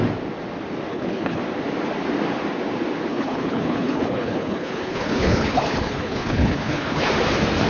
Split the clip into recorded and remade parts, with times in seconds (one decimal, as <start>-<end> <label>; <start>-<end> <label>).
0.0-0.9 recorded; 0.9-1.4 remade; 1.4-3.1 recorded; 3.1-7.1 remade; 7.1-7.7 recorded